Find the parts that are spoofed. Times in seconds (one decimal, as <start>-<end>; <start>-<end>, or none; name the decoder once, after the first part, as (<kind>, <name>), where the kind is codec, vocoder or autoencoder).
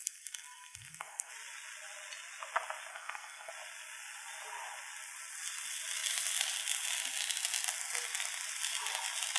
0.0-1.3 (codec, SNAC); 2.9-3.5